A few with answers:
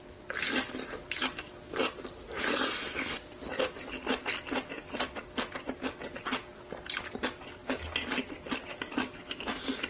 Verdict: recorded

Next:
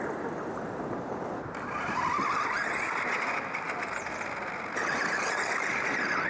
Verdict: recorded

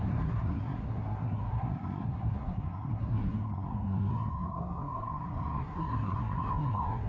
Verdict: remade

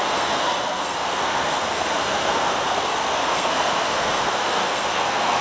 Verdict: remade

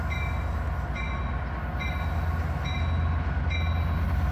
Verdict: recorded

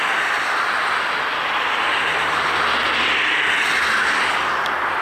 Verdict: recorded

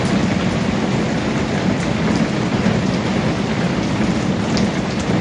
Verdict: recorded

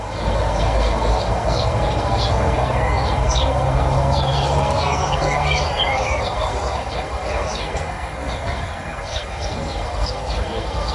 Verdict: remade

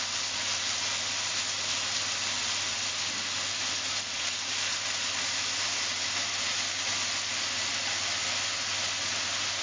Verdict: recorded